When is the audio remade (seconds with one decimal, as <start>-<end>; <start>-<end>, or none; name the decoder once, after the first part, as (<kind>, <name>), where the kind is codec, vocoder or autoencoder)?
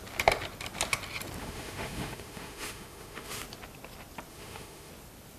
1.4-3.4 (autoencoder, DAC-VAE); 4.3-4.9